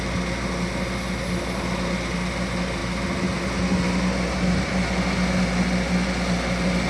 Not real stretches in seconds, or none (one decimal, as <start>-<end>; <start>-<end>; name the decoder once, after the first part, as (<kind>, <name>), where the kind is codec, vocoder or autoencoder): none